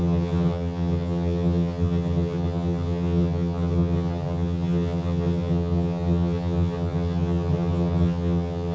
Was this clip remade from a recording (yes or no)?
yes